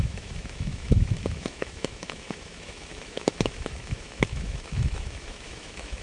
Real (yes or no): no